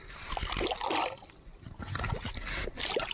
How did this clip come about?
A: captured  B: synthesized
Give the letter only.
A